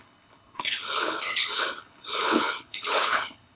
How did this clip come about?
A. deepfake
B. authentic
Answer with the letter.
A